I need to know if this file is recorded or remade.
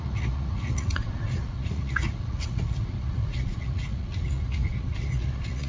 remade